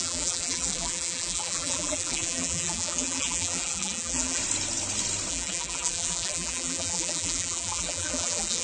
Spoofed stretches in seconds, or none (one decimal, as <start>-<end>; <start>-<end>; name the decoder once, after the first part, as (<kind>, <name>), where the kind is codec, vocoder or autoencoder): 0.0-4.4 (vocoder, BigVGAN v2); 5.3-8.6